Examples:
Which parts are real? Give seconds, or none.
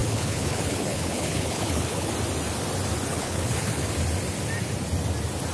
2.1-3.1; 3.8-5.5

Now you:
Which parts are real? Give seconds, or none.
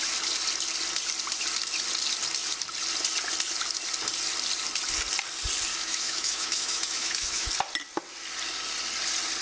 0.0-5.7; 7.5-9.4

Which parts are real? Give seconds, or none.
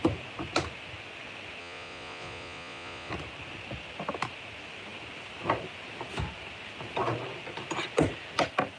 0.0-1.6; 3.1-8.8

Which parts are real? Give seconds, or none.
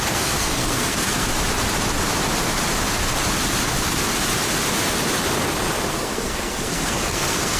1.3-5.9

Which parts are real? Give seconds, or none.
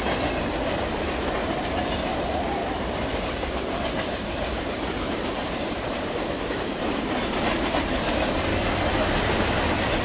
0.0-1.4; 2.1-2.6; 6.8-10.0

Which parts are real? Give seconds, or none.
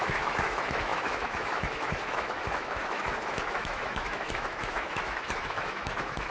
none